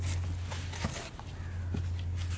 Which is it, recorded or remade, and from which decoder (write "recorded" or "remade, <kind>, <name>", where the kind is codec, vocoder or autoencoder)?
recorded